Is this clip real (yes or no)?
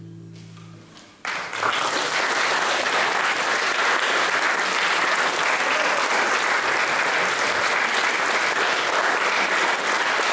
yes